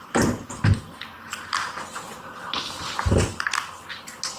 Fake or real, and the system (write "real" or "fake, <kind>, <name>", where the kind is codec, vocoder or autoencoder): real